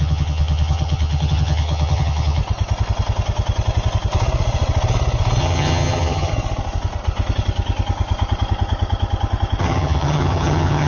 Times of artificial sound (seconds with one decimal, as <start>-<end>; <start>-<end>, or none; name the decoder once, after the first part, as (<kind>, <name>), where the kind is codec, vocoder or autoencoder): 0.0-2.4 (vocoder, HiFi-GAN); 5.4-6.3; 9.6-10.9